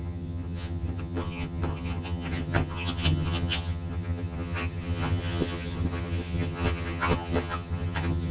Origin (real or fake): fake